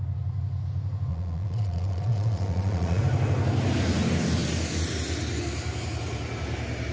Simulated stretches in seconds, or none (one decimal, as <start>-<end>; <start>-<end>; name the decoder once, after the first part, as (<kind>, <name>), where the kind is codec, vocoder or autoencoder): 1.1-3.0 (vocoder, Vocos)